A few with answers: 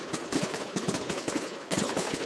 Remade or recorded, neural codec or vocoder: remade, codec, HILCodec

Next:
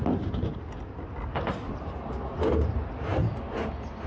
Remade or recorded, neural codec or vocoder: recorded